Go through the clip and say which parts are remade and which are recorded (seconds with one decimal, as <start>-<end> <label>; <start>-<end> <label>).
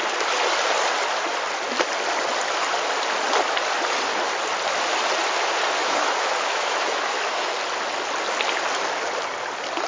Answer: 0.0-5.8 recorded; 5.8-7.5 remade; 7.5-9.9 recorded